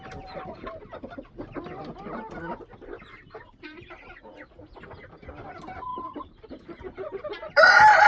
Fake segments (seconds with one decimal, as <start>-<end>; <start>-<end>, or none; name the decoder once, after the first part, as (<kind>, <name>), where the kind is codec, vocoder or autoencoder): 5.9-6.5 (vocoder, BigVGAN v2)